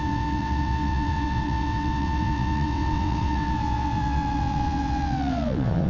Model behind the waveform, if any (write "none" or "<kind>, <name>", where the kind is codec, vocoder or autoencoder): vocoder, WaveNeXt